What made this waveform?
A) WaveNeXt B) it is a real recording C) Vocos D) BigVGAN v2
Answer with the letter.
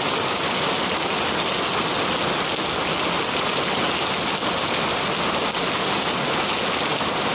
B